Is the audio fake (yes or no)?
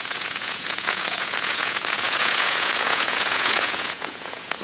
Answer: yes